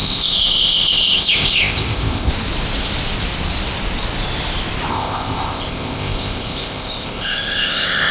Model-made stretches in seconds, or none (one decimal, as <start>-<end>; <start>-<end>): 0.0-2.3; 4.9-8.1